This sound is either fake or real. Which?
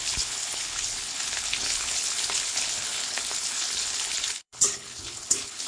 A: fake